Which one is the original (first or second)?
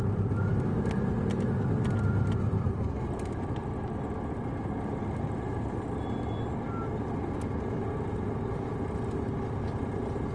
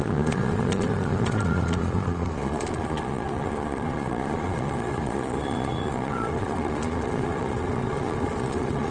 first